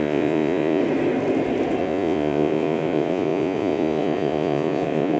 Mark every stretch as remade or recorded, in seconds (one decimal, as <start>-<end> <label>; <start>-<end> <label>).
0.0-0.8 remade; 0.8-1.8 recorded; 1.8-5.2 remade

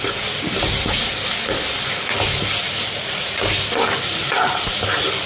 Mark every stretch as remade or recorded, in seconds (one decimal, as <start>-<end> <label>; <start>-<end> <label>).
0.0-5.3 recorded

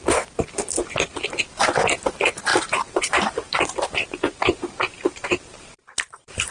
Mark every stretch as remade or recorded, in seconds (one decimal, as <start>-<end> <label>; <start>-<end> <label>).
0.0-2.5 recorded; 2.5-6.5 remade

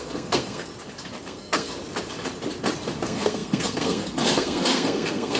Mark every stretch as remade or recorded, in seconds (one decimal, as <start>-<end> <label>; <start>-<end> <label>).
0.0-0.7 remade; 0.7-1.2 recorded; 1.2-1.7 remade; 1.7-3.0 recorded; 3.0-5.4 remade

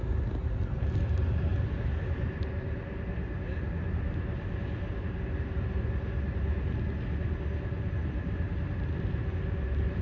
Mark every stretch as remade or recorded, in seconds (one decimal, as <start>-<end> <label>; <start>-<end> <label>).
0.0-10.0 recorded